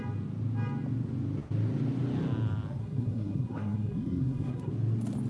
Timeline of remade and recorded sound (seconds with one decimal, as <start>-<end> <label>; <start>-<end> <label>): 0.0-2.8 recorded; 2.8-4.7 remade; 4.7-5.3 recorded